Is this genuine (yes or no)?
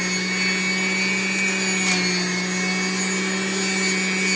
yes